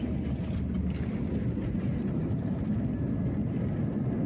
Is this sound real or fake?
real